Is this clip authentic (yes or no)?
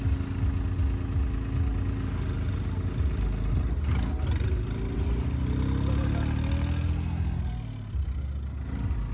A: yes